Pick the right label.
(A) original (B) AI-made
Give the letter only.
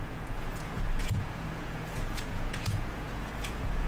B